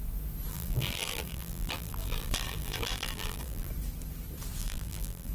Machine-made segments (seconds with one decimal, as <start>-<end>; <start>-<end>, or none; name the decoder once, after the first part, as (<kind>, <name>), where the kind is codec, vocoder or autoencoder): 0.5-3.7 (vocoder, BigVGAN v2); 4.6-5.3